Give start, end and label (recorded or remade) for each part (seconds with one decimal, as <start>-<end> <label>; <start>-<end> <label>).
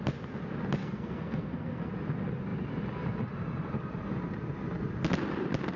0.0-0.8 recorded; 0.8-1.9 remade; 1.9-5.8 recorded